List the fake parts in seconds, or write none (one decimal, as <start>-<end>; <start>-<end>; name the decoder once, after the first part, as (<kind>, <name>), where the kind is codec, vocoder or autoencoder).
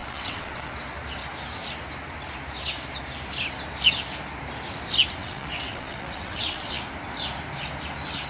0.0-0.7 (vocoder, WaveNeXt); 5.2-6.8